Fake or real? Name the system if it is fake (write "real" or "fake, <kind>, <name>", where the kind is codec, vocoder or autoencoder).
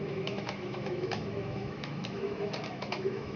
fake, autoencoder, DAC-VAE